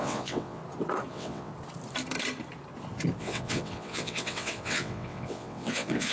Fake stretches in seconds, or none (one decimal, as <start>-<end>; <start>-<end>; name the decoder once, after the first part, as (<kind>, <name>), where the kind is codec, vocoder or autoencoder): 0.0-0.6 (vocoder, WaveNeXt); 1.1-1.5; 3.2-6.1